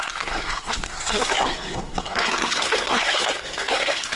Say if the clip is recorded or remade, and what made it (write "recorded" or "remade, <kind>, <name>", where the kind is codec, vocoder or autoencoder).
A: remade, codec, SNAC